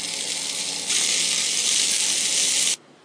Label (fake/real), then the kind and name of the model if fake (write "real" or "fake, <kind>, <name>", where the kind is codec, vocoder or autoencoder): real